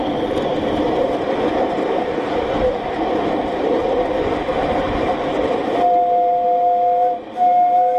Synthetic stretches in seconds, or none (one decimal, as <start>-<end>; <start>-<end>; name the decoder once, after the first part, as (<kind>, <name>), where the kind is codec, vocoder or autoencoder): none